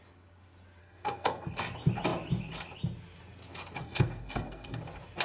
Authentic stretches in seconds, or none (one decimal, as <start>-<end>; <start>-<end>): 0.0-0.8; 1.6-3.8; 4.8-5.2